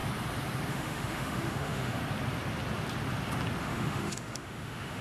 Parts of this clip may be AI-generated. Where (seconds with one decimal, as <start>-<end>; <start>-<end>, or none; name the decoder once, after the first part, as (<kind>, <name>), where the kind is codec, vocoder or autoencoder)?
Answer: 0.7-2.0 (autoencoder, DAC-VAE); 3.6-5.0